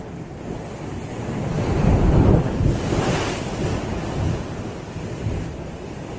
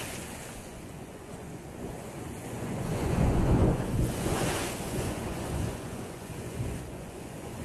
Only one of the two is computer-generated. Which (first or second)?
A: second